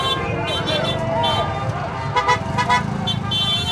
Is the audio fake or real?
real